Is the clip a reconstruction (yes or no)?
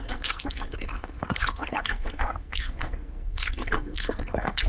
yes